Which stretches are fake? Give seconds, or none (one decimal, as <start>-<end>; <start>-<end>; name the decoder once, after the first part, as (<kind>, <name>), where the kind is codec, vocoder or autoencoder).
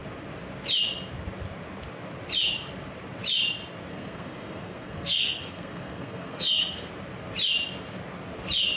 3.9-6.9 (codec, SNAC)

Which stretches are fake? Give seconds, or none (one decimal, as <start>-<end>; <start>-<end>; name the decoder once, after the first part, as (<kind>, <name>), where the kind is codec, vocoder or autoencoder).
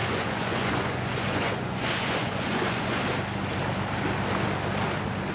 0.0-3.0 (vocoder, Vocos)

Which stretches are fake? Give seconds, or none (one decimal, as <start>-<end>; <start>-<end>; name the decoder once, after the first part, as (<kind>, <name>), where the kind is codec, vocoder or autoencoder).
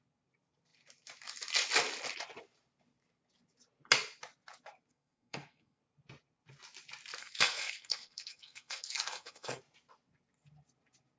4.9-5.8 (codec, SNAC); 7.2-9.6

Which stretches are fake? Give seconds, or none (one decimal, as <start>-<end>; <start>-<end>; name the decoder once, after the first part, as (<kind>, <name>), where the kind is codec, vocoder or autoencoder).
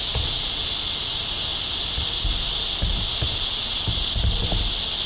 none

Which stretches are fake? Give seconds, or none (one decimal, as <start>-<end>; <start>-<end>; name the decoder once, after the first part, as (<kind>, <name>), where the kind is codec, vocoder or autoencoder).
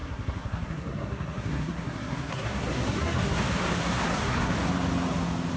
0.0-3.4 (codec, SNAC); 3.8-4.5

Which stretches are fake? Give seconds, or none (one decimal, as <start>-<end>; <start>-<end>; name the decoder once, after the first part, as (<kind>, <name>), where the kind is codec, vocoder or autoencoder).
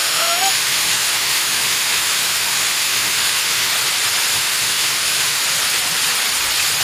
0.0-3.7 (autoencoder, DAC-VAE); 4.3-5.4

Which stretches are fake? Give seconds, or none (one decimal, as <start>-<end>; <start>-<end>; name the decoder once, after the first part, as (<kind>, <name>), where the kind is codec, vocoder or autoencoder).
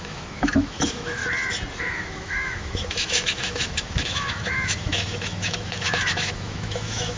0.0-1.2 (autoencoder, DAC-VAE); 1.8-7.2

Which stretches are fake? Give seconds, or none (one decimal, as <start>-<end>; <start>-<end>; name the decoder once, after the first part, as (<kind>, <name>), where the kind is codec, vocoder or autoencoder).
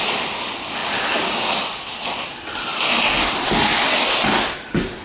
none